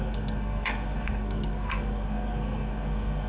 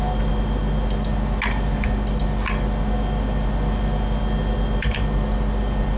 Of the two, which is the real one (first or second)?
second